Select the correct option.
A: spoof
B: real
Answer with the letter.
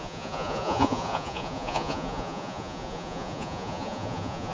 A